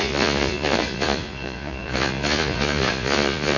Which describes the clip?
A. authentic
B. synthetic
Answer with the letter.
B